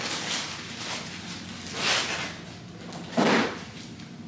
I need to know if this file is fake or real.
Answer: real